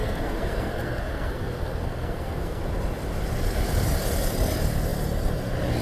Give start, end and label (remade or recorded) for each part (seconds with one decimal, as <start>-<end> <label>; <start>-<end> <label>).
0.0-2.7 remade; 2.7-5.8 recorded